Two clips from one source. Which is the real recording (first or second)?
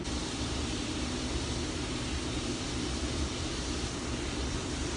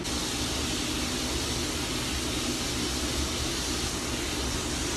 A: second